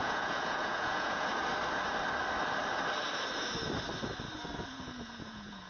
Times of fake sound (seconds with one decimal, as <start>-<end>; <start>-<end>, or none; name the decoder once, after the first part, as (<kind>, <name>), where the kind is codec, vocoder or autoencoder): 0.0-1.3 (vocoder, Vocos); 4.7-5.7